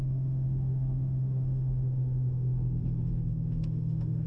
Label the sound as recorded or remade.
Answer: remade